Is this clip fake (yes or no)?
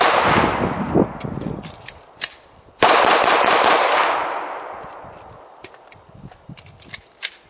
no